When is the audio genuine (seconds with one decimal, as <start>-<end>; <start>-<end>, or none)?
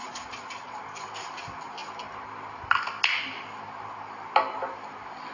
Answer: 0.8-5.3